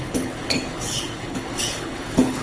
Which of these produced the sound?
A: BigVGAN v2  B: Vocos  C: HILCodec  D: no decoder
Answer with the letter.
C